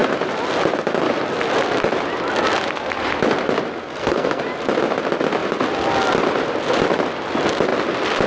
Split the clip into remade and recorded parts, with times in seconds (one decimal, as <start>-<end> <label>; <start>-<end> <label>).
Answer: 0.0-3.8 recorded; 3.8-4.4 remade; 4.4-8.3 recorded